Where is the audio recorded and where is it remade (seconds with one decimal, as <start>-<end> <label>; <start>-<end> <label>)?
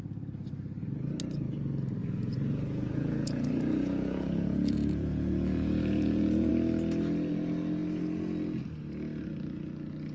0.0-2.0 recorded; 2.0-6.5 remade; 6.5-10.1 recorded